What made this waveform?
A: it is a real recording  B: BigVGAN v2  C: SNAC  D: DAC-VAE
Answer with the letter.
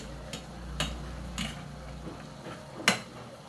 A